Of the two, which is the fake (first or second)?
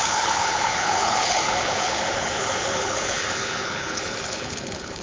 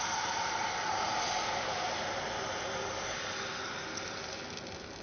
first